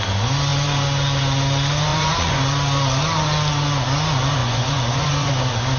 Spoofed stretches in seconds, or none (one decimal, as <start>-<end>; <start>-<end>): 1.9-2.4; 4.4-5.3